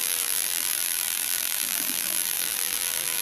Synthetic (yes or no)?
yes